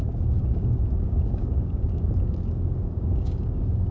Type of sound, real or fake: fake